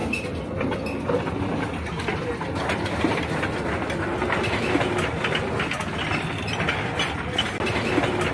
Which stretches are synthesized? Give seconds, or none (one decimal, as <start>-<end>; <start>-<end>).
none